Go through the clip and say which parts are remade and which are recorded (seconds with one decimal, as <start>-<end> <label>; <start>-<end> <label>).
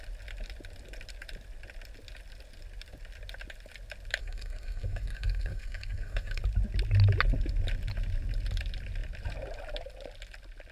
0.0-4.2 recorded; 4.2-6.4 remade; 6.4-10.7 recorded